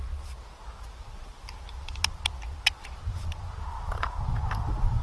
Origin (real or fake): real